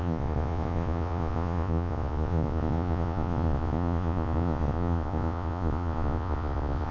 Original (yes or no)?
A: no